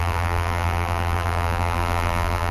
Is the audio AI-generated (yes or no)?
yes